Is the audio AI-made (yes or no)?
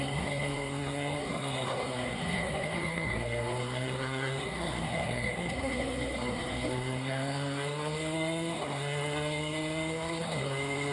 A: yes